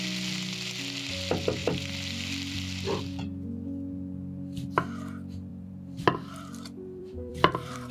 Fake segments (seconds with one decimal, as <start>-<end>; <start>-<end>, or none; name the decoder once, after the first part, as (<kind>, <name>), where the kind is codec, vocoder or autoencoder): 1.6-3.0 (vocoder, BigVGAN v2); 5.5-7.9